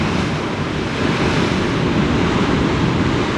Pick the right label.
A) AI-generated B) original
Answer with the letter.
B